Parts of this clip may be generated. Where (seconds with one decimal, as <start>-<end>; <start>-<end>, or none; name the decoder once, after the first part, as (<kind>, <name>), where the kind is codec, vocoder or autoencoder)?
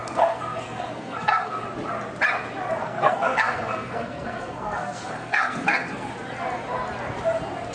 0.0-1.6 (codec, SNAC); 2.8-6.1